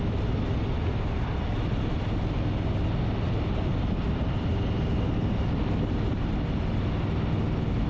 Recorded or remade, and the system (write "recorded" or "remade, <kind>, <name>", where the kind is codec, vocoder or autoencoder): recorded